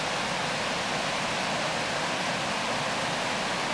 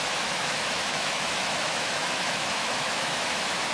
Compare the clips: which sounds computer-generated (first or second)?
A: second